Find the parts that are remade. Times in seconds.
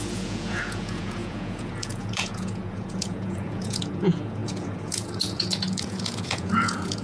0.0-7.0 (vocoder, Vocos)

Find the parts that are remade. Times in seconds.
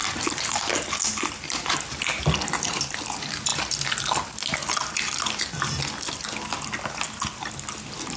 none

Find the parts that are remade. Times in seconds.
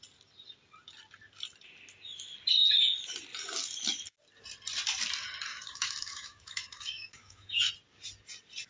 5.5-7.7 (autoencoder, DAC-VAE)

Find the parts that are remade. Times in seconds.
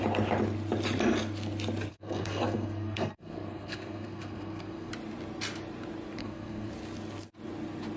1.9-4.9 (codec, SNAC); 6.2-6.7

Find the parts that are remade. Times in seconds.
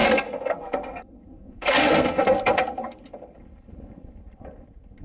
0.0-3.0 (codec, SNAC)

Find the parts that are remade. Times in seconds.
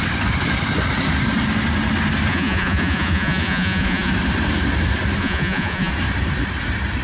2.3-4.1 (vocoder, Vocos); 5.2-5.9